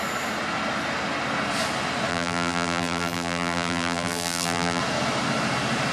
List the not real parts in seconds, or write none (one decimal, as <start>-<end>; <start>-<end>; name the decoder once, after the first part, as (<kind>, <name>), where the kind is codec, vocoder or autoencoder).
2.1-4.8 (vocoder, BigVGAN v2)